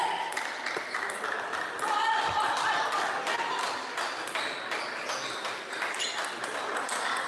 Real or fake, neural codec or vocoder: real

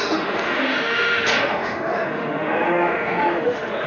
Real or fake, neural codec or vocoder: fake, autoencoder, DAC-VAE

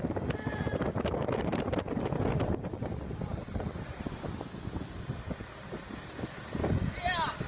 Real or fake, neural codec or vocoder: real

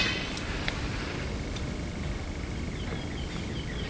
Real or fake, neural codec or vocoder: real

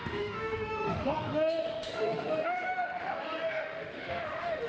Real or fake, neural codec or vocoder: fake, autoencoder, DAC-VAE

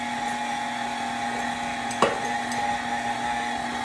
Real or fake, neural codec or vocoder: real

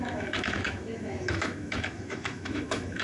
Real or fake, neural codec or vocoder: fake, autoencoder, DAC-VAE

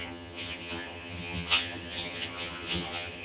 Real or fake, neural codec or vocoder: fake, vocoder, HiFi-GAN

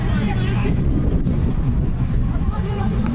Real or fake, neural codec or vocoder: fake, vocoder, Vocos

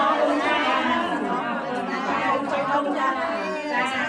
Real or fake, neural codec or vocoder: real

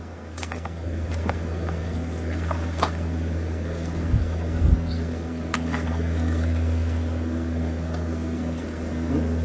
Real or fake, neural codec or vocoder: fake, codec, SNAC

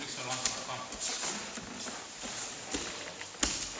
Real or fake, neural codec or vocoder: real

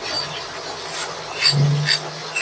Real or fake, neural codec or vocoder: real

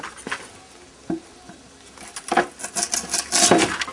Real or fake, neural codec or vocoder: real